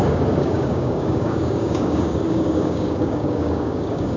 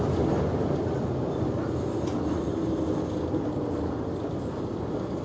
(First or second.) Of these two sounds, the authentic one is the second